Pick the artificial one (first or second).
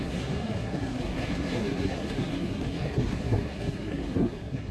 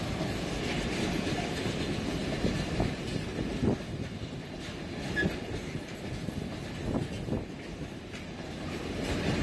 first